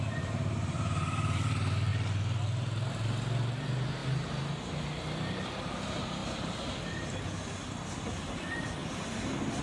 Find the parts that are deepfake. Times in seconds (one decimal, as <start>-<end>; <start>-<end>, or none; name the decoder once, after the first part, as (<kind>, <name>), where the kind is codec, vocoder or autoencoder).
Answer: none